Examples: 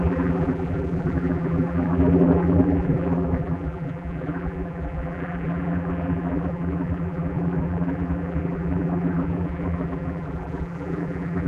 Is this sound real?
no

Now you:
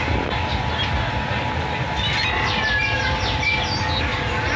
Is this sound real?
yes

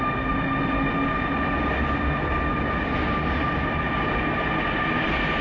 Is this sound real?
yes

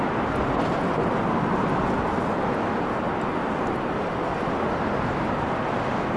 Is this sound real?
yes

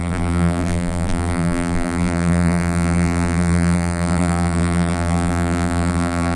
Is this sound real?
no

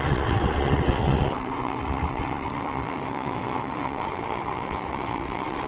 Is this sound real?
no